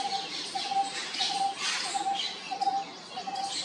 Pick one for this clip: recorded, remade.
recorded